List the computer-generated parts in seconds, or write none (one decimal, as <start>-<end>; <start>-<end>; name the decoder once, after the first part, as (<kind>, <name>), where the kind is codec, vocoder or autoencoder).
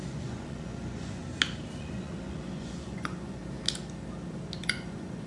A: 0.0-1.2 (vocoder, Vocos); 1.8-3.4; 4.6-5.3